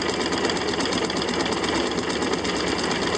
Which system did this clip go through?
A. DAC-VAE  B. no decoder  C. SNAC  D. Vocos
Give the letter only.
B